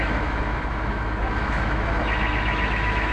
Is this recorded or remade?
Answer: remade